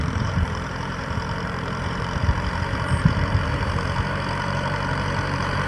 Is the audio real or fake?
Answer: fake